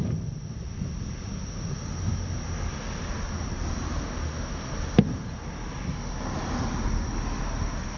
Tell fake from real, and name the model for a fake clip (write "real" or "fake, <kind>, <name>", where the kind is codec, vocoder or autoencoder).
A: real